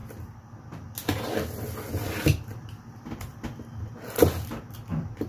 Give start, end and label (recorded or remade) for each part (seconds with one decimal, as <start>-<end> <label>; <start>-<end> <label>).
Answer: 0.0-5.3 recorded